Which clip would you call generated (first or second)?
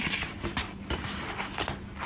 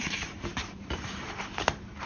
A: second